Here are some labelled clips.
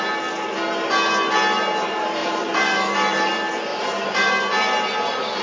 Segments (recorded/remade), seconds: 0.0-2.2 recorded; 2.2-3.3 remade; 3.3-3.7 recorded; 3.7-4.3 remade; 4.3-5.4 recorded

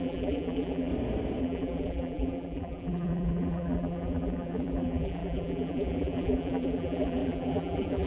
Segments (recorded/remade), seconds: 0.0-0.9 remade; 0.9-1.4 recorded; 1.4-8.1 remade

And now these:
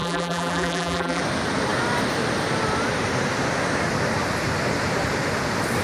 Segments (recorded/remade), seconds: 0.0-1.2 remade; 1.2-5.8 recorded

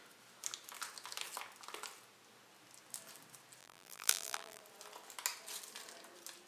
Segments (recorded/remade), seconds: 0.0-3.6 recorded; 3.6-4.6 remade; 4.6-6.5 recorded